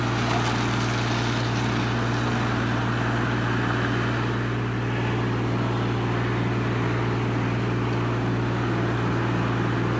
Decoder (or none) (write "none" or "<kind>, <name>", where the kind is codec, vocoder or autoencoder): none